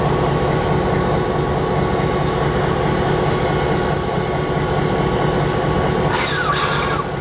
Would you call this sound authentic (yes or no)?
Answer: yes